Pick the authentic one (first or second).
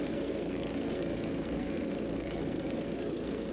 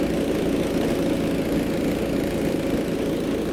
second